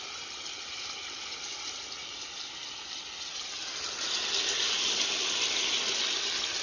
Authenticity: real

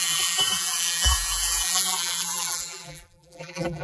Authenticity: fake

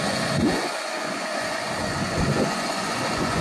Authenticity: fake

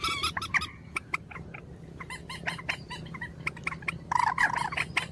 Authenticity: real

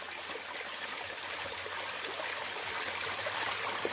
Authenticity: real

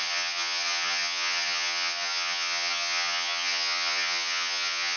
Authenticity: fake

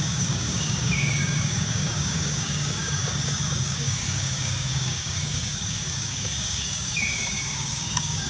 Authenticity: fake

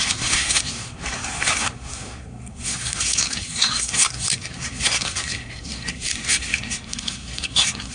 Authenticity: fake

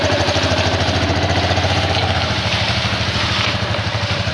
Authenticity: fake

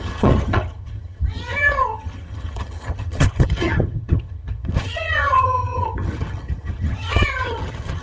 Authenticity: fake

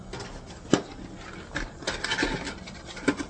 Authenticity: real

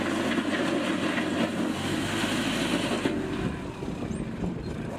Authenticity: real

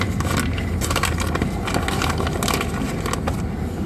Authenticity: real